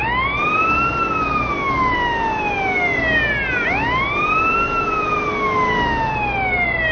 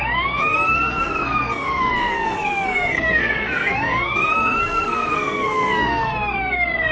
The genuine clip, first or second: first